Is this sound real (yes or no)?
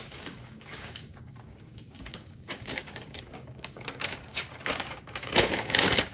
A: no